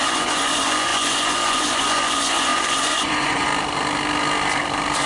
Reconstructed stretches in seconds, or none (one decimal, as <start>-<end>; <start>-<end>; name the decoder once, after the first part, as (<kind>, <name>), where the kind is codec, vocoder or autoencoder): 0.0-3.5 (vocoder, Vocos)